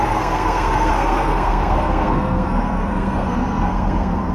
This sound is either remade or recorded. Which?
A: remade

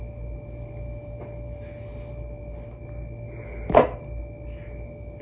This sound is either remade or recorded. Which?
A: recorded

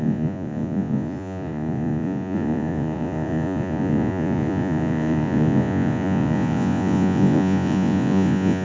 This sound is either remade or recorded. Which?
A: remade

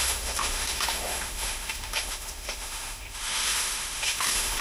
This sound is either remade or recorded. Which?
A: remade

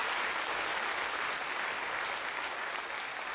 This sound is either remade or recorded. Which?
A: recorded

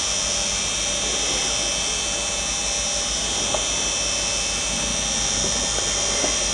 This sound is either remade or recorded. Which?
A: recorded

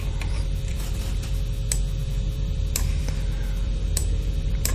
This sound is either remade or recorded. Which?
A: remade